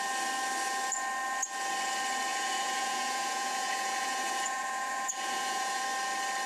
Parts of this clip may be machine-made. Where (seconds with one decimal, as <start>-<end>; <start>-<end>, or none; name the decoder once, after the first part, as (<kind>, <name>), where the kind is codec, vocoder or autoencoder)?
2.3-5.8 (vocoder, Vocos)